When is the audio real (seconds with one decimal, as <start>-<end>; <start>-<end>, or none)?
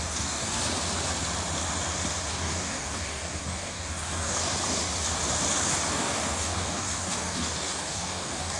0.6-2.3; 4.4-5.9